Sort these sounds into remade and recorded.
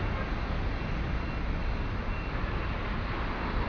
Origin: recorded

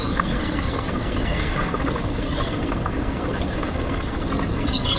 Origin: remade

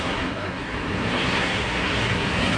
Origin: remade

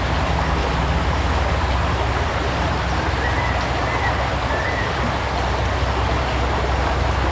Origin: recorded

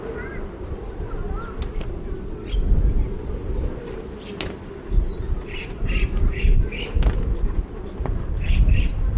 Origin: recorded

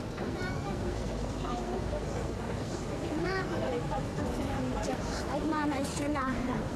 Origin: remade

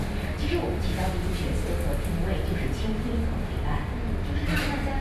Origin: recorded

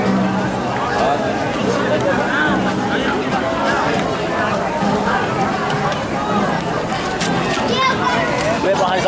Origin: recorded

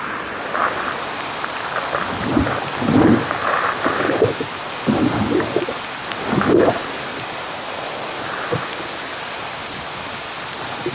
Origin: recorded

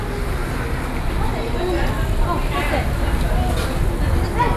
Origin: recorded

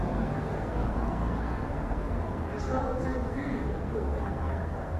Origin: remade